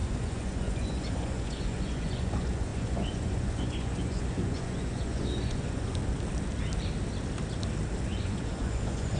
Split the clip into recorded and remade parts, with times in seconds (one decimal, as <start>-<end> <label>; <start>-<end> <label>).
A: 0.0-6.0 remade; 6.0-8.0 recorded; 8.0-9.2 remade